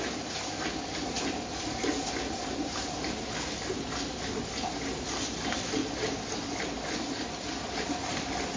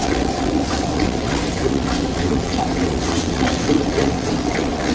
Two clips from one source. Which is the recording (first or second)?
first